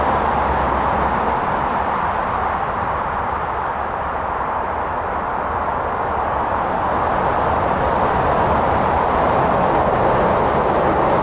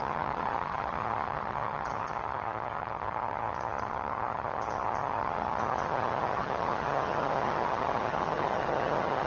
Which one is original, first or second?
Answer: first